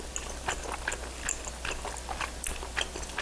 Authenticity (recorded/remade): recorded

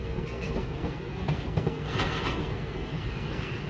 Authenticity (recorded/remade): remade